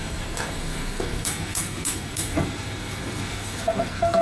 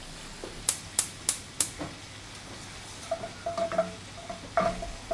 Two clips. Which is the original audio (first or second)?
second